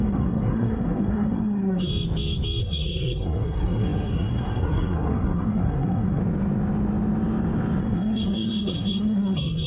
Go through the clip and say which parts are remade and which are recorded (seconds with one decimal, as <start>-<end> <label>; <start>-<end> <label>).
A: 0.0-1.9 remade; 1.9-2.6 recorded; 2.6-6.2 remade; 6.2-7.8 recorded; 7.8-9.7 remade